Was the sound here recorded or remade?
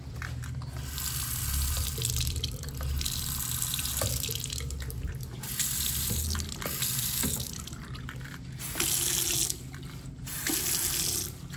recorded